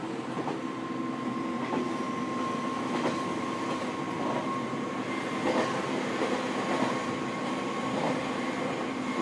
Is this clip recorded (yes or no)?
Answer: yes